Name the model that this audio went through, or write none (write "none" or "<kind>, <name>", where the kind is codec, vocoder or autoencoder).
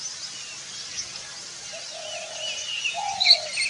none